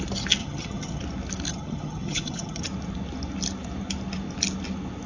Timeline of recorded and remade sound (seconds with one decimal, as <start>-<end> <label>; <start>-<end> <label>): 0.0-0.4 recorded; 0.4-1.0 remade; 1.0-1.5 recorded; 1.5-2.6 remade; 2.6-5.1 recorded